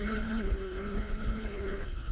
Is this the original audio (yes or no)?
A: no